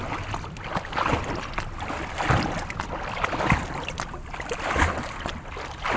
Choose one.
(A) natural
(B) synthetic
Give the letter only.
A